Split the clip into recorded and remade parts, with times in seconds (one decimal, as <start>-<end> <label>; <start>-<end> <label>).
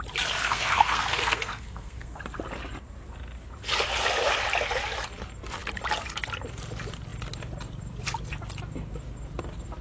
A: 0.0-0.4 recorded; 0.4-2.2 remade; 2.2-9.8 recorded